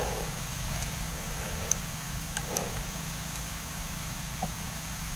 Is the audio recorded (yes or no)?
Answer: no